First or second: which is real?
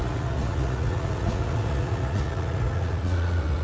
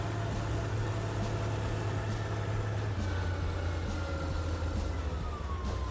second